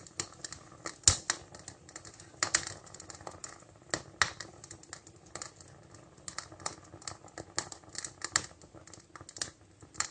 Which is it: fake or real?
real